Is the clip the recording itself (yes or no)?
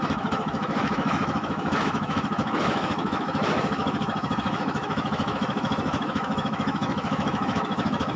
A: no